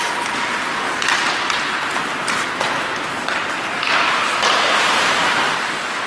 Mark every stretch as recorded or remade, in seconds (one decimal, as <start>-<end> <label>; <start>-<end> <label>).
0.0-6.1 recorded